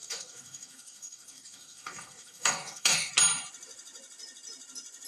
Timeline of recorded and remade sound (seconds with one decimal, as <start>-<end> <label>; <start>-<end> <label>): 0.0-3.1 remade; 3.1-5.1 recorded